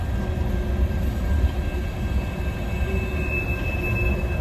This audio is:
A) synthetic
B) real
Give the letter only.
B